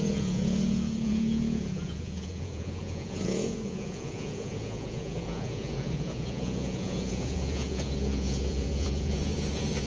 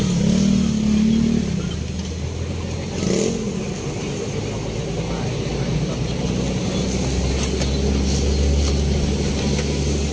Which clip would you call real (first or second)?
second